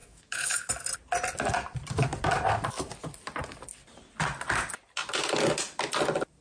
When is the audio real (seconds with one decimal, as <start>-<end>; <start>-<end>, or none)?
0.7-6.4